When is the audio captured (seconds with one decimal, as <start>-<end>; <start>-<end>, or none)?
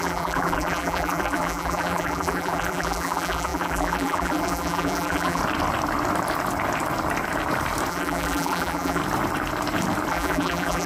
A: 5.4-7.9; 9.0-10.1